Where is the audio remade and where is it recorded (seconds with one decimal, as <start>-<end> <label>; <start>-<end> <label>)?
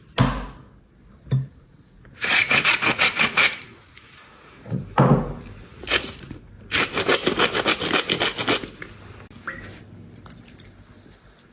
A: 0.0-1.5 recorded; 1.5-4.8 remade; 4.8-5.7 recorded; 5.7-6.5 remade; 6.5-11.5 recorded